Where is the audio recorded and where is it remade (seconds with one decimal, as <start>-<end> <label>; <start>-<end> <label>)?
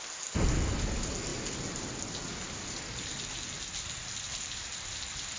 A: 0.0-5.4 recorded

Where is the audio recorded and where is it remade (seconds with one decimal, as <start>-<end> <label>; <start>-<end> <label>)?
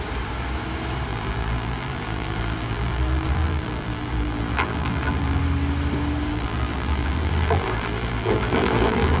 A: 0.0-1.1 recorded; 1.1-5.4 remade; 5.4-6.3 recorded; 6.3-9.2 remade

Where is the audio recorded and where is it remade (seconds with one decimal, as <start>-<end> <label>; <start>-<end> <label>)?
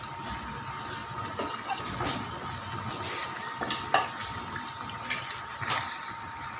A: 0.0-6.6 recorded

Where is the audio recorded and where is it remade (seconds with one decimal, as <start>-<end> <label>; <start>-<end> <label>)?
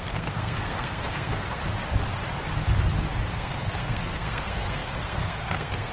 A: 0.0-1.6 remade; 1.6-3.3 recorded; 3.3-5.9 remade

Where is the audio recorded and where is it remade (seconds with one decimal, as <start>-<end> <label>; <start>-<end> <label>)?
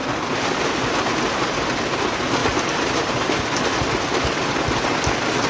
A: 0.0-2.4 recorded; 2.4-3.4 remade; 3.4-5.5 recorded